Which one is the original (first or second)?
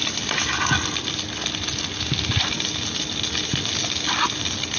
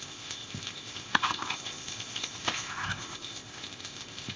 first